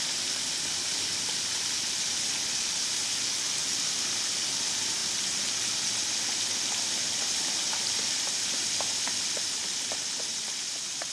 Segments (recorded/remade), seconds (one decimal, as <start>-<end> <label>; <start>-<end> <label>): 0.0-11.1 recorded

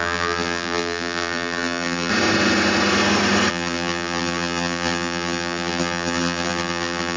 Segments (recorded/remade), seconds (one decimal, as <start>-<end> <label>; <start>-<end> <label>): 0.0-2.1 remade; 2.1-3.5 recorded; 3.5-7.2 remade